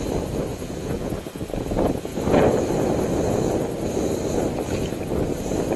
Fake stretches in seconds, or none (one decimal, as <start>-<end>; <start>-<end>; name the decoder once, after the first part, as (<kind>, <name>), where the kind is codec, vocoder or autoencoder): 0.5-1.2 (vocoder, Vocos)